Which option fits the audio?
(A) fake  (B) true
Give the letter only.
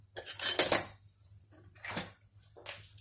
B